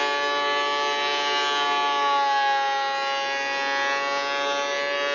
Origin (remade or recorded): recorded